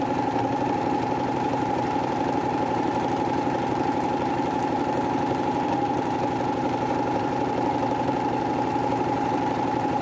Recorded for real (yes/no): no